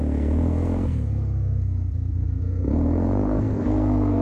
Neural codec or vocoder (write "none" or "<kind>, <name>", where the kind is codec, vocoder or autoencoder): codec, SNAC